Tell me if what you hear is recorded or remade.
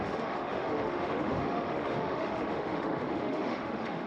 remade